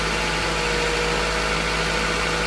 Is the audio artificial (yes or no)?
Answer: no